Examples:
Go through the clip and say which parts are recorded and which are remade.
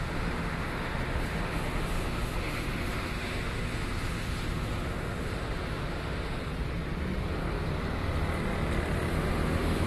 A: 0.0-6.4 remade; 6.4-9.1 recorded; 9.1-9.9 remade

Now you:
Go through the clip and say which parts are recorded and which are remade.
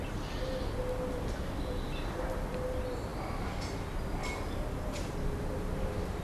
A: 0.0-6.2 recorded